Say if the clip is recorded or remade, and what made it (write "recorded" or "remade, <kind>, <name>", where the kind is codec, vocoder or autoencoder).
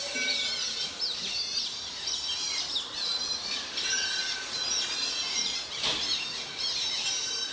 remade, vocoder, BigVGAN v2